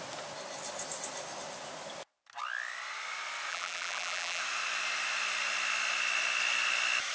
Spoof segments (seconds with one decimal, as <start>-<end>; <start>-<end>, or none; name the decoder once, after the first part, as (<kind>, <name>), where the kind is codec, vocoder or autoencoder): 3.5-4.4 (vocoder, BigVGAN v2)